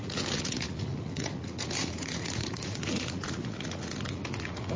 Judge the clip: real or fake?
fake